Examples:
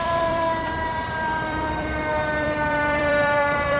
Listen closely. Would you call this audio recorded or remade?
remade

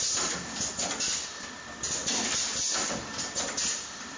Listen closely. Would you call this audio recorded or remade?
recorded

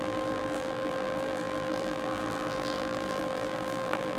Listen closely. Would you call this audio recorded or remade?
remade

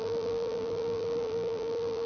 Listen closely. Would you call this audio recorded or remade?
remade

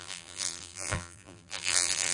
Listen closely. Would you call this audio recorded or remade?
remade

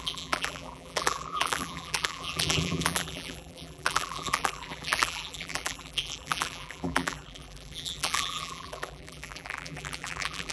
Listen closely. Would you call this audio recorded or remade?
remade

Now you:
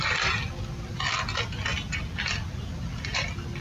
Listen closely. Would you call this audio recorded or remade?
recorded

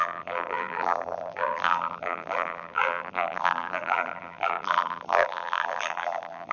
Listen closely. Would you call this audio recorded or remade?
remade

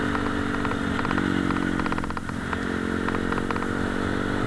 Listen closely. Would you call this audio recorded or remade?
recorded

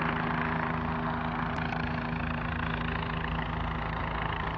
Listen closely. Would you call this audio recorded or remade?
recorded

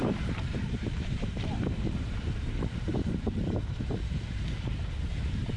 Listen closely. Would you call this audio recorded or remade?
remade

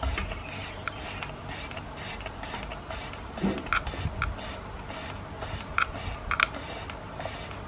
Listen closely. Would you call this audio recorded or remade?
recorded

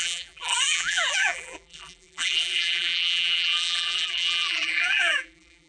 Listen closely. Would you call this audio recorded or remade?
remade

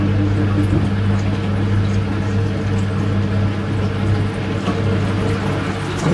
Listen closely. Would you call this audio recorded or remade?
recorded